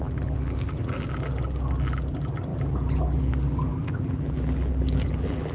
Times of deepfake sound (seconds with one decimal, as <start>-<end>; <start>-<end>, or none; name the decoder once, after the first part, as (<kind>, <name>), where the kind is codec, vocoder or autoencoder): 0.0-5.5 (vocoder, BigVGAN v2)